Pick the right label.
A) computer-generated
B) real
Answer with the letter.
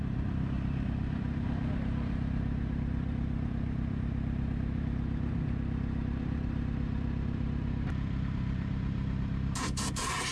A